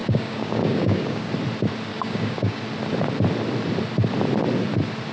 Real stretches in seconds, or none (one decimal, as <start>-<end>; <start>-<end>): 1.3-1.9; 2.6-5.1